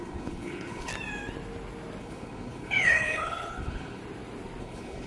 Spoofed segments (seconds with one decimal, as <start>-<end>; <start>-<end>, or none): 0.0-0.9; 2.0-4.0; 4.6-5.1